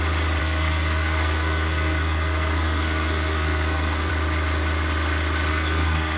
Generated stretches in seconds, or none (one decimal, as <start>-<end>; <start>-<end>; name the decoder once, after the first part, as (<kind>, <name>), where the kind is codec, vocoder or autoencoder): 0.4-4.1 (codec, SNAC); 5.5-6.2